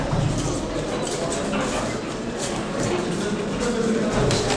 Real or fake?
real